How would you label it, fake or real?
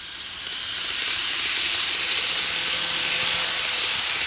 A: real